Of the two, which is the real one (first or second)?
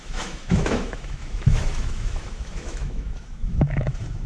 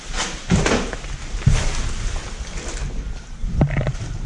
second